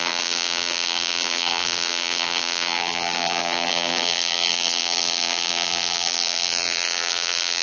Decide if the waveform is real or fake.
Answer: fake